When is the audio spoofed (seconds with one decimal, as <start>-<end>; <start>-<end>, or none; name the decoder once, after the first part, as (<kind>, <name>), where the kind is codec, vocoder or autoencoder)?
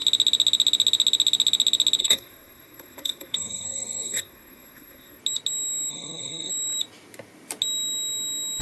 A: 2.0-5.2 (codec, SNAC); 5.9-6.5